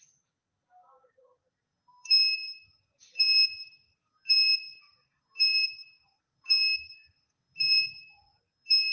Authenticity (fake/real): fake